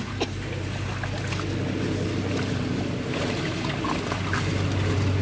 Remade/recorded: recorded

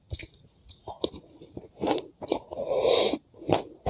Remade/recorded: remade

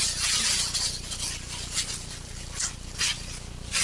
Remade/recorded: recorded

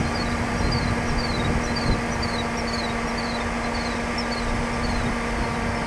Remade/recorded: recorded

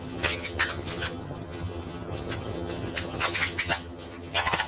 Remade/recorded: remade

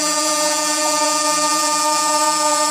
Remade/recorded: remade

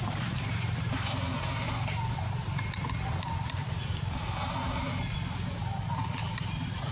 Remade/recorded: remade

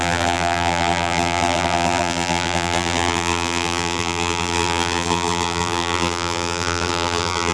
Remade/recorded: remade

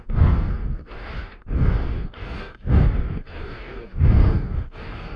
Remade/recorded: remade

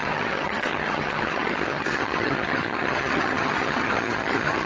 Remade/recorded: remade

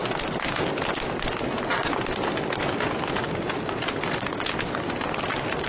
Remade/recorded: recorded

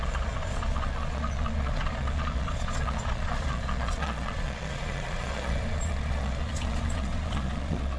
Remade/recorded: remade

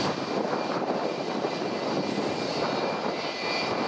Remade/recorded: recorded